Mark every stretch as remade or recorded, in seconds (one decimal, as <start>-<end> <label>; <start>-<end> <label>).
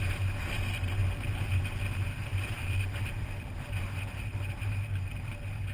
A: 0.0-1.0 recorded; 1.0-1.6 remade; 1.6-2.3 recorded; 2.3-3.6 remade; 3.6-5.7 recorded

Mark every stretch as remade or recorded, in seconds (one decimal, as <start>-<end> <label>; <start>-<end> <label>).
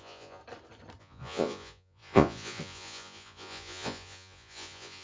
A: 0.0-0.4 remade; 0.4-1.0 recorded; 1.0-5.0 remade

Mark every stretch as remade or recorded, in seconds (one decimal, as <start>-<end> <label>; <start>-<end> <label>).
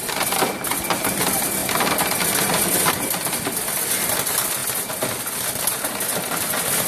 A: 0.0-4.6 remade; 4.6-6.9 recorded